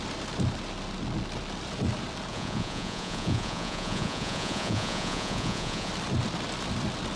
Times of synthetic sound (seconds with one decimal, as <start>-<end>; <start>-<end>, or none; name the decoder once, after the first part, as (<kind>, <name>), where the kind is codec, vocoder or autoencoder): 2.3-5.9 (vocoder, Vocos)